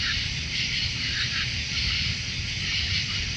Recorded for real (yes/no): yes